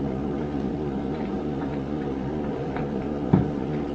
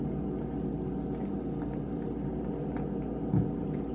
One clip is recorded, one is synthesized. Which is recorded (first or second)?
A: second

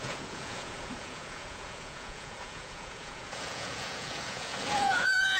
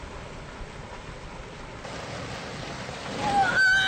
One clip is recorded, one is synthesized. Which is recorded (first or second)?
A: second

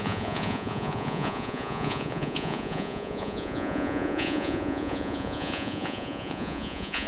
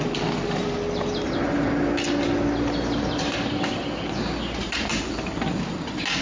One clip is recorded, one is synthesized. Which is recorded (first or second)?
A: second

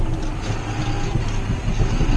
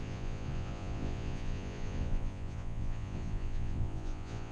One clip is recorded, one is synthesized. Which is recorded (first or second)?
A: first